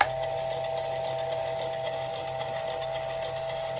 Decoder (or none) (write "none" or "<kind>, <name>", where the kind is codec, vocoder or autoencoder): none